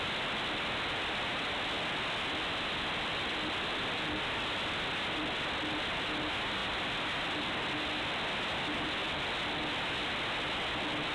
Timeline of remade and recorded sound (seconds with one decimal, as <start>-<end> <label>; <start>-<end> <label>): 0.0-11.1 recorded

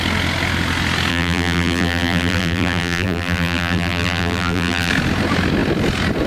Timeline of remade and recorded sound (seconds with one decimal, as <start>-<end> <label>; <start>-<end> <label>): 0.0-1.1 recorded; 1.1-4.9 remade; 4.9-6.3 recorded

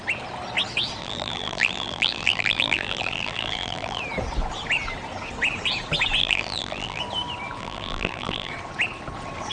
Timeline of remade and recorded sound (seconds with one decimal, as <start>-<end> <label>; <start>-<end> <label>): 0.0-1.0 recorded; 1.0-4.0 remade; 4.0-6.2 recorded; 6.2-7.0 remade; 7.0-7.6 recorded; 7.6-8.5 remade; 8.5-9.5 recorded

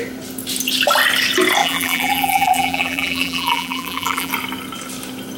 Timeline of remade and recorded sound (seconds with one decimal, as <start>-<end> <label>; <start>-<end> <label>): 0.0-1.6 recorded; 1.6-4.3 remade; 4.3-5.4 recorded

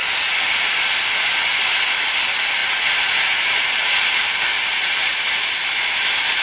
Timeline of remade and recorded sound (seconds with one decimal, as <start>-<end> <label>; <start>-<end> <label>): 0.0-2.6 recorded; 2.6-5.5 remade; 5.5-6.4 recorded

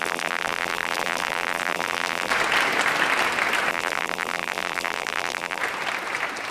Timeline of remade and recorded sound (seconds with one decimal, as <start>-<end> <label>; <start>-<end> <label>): 0.0-2.3 remade; 2.3-3.7 recorded; 3.7-5.6 remade; 5.6-6.5 recorded